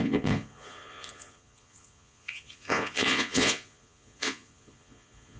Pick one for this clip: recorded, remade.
remade